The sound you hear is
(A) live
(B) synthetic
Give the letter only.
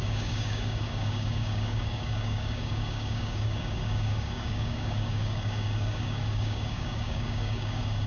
B